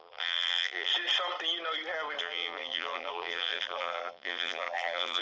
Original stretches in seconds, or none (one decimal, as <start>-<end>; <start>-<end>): 0.9-2.2